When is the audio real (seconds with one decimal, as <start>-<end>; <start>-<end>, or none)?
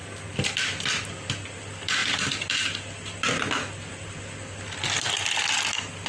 0.0-6.1